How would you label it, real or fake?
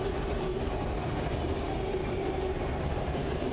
real